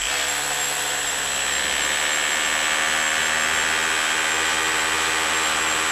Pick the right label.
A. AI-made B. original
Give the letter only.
B